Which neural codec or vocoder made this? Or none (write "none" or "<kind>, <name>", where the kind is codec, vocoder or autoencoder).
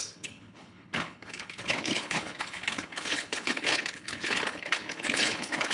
codec, HILCodec